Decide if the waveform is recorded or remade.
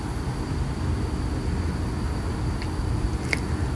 recorded